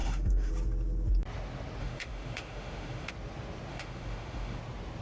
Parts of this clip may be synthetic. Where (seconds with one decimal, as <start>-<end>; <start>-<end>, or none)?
0.0-0.5; 1.8-3.1; 3.7-4.6